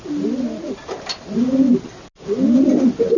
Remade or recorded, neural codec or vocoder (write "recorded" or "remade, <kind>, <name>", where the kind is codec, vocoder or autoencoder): recorded